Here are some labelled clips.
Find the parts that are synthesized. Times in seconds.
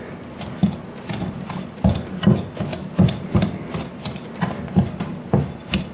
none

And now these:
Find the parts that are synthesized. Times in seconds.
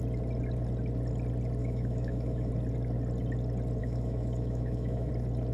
1.6-2.5 (autoencoder, DAC-VAE); 3.8-5.1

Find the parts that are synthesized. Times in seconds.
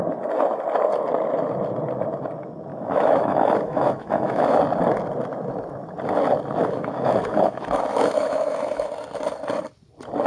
2.7-4.6 (autoencoder, DAC-VAE); 6.6-8.9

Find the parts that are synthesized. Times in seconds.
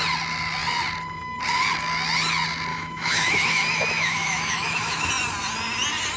2.7-5.1 (autoencoder, DAC-VAE)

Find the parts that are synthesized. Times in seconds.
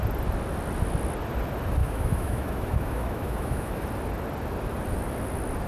1.8-3.8 (autoencoder, DAC-VAE)